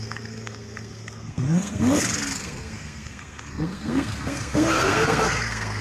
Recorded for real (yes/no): no